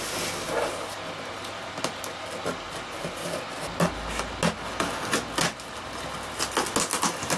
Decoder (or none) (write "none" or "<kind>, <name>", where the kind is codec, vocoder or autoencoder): none